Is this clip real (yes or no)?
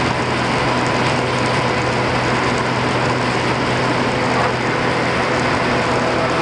yes